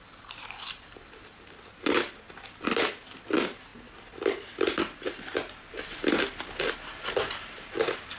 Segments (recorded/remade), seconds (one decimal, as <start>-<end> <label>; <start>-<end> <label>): 0.0-8.2 recorded